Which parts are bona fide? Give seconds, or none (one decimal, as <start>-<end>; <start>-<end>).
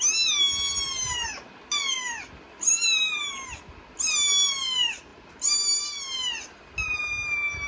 0.0-7.7